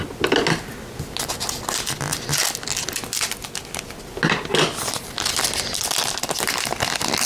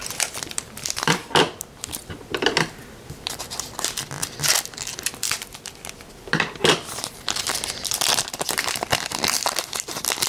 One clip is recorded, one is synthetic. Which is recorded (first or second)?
first